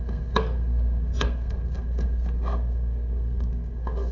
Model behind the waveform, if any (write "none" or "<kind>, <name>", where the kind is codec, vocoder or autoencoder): codec, SNAC